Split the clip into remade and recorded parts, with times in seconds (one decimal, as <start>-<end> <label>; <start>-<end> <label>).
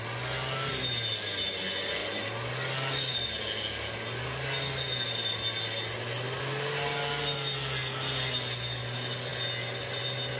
0.0-10.4 recorded